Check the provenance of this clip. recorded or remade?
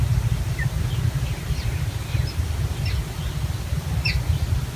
recorded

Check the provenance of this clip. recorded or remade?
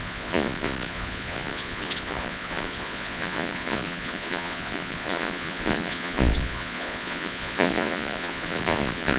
remade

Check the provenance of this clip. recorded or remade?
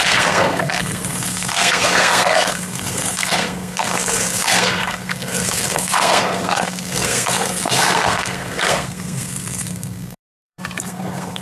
remade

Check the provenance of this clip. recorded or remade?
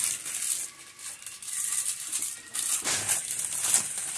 recorded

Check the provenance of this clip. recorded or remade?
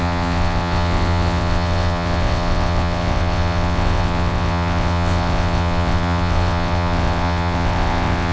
remade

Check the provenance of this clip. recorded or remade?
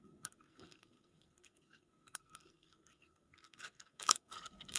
remade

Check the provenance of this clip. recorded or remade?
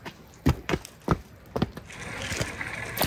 recorded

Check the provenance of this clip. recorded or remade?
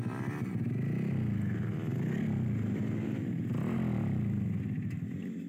recorded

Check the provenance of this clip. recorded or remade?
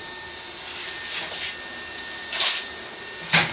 recorded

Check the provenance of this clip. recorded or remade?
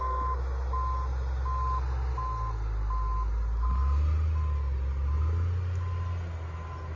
recorded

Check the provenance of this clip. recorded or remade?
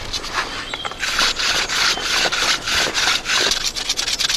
recorded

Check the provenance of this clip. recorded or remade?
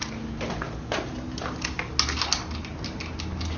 recorded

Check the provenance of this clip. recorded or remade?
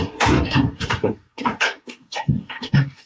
remade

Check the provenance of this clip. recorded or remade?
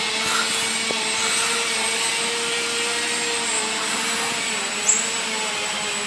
remade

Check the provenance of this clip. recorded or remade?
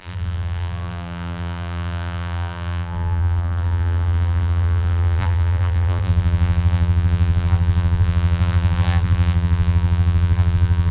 remade